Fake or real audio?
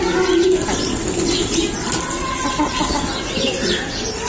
real